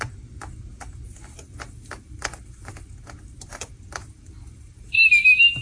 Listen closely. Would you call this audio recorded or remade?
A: remade